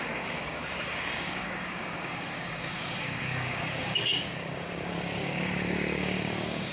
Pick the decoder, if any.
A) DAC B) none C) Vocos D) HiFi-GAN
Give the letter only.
A